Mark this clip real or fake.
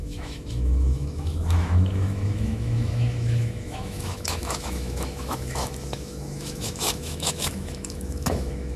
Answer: fake